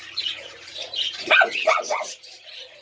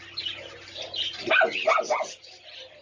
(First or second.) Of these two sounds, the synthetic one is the first